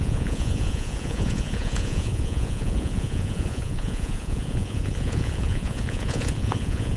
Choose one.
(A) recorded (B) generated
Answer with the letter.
B